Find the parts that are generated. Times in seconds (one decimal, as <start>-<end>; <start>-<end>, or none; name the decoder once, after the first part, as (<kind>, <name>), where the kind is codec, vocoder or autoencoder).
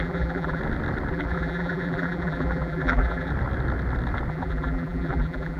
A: 0.0-0.6 (vocoder, BigVGAN v2); 1.1-3.3; 4.3-5.6